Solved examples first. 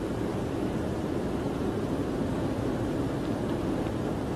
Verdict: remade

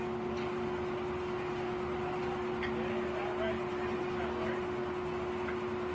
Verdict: recorded